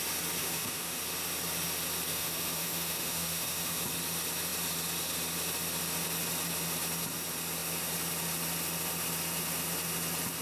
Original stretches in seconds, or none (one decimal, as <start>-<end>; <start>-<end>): 0.0-0.4; 1.0-2.1; 3.8-10.4